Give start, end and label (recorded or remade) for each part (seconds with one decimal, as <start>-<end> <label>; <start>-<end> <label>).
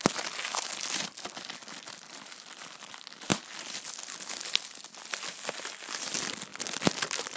0.0-7.4 recorded